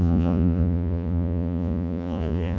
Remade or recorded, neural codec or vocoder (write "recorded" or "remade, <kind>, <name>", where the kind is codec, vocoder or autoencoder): remade, vocoder, Vocos